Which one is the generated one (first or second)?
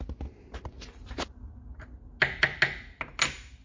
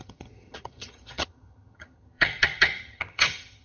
second